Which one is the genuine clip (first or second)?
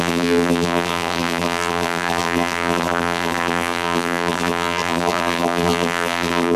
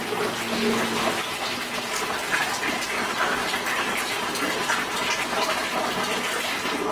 second